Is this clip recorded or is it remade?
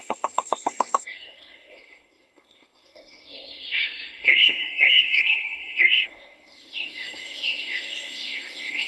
remade